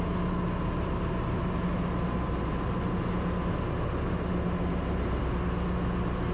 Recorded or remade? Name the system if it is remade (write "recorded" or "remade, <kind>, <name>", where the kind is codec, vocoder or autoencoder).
recorded